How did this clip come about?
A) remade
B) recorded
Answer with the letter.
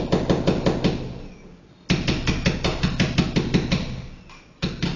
B